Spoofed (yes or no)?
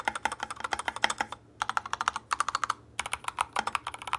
no